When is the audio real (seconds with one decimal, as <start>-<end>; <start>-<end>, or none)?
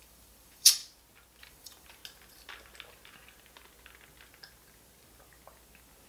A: 0.8-1.4; 2.0-6.1